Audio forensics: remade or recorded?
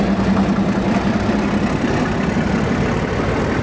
recorded